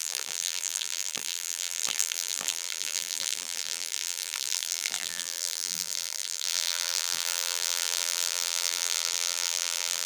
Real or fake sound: fake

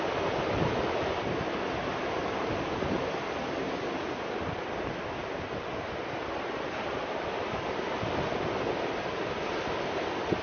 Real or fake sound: real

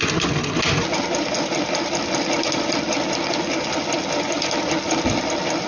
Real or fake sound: real